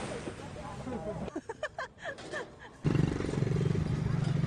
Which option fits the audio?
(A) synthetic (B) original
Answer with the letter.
B